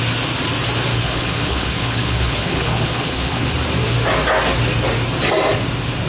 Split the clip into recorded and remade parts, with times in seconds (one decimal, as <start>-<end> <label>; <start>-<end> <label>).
0.0-0.9 recorded; 0.9-3.5 remade; 3.5-6.1 recorded